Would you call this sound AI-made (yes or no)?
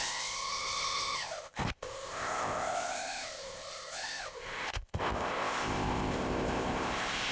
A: yes